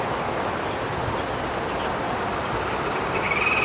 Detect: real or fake real